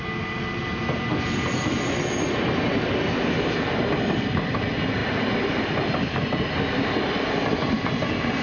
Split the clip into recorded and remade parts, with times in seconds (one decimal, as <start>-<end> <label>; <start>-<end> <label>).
0.0-8.4 recorded